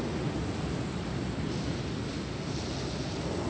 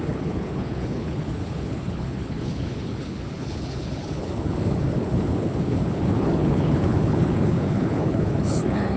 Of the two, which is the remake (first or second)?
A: second